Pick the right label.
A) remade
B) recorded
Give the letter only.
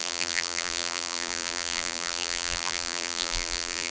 A